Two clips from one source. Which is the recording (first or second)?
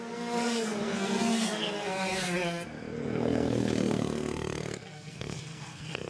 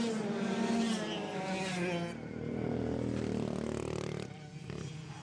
second